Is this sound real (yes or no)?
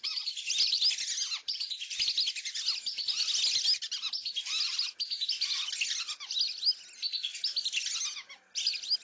yes